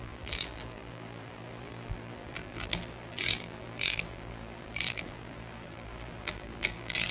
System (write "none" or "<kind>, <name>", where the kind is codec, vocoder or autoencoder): vocoder, BigVGAN v2